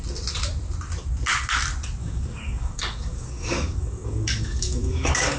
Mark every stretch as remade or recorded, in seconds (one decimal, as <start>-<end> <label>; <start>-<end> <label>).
0.0-2.0 recorded; 2.0-5.4 remade